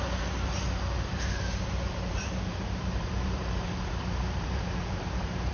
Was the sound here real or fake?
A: fake